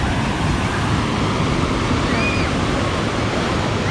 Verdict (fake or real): real